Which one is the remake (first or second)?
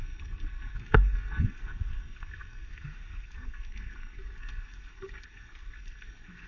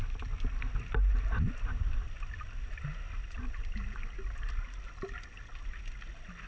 first